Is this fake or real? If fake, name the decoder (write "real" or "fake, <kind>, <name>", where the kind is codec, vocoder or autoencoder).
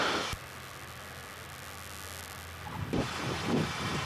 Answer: real